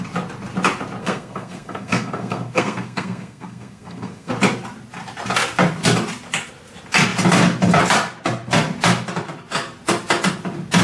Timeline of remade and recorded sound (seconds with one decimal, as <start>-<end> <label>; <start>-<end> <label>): 0.0-1.0 recorded; 1.0-4.3 remade; 4.3-10.8 recorded